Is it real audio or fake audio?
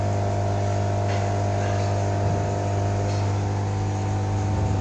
real